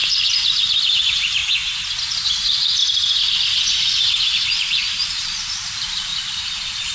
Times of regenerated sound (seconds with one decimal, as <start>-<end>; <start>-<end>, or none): 0.9-1.4; 2.0-2.8; 4.4-6.9

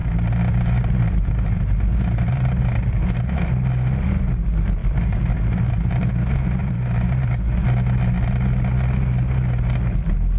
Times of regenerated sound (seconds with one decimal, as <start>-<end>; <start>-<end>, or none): 0.0-3.4; 4.8-6.1; 6.6-7.3

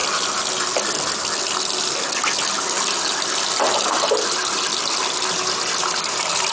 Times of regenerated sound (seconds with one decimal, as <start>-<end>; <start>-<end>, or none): 3.9-4.7; 5.3-6.5